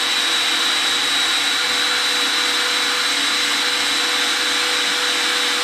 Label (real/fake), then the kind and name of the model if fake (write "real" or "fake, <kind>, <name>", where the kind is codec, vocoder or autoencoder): real